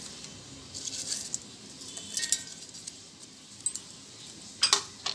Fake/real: real